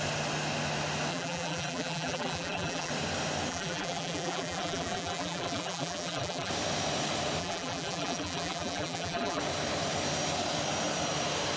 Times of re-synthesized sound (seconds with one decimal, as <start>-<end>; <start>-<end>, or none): 1.1-2.9; 3.5-6.5; 7.4-9.4